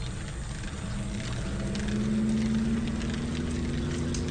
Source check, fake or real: real